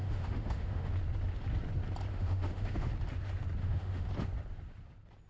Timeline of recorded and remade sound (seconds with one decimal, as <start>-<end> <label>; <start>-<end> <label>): 0.0-0.9 remade; 0.9-2.1 recorded; 2.1-2.9 remade; 2.9-3.6 recorded; 3.6-4.1 remade; 4.1-5.3 recorded